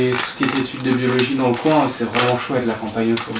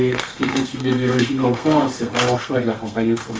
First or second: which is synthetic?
second